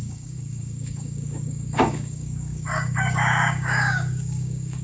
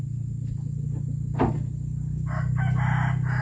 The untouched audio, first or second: second